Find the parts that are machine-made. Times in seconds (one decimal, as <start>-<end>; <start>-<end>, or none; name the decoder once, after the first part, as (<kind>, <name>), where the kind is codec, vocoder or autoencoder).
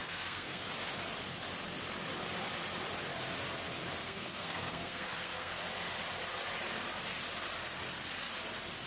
0.0-0.7 (codec, SNAC); 4.0-5.5